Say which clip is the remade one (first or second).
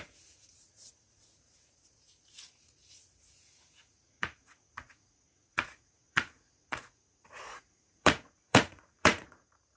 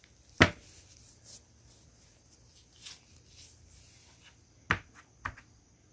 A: first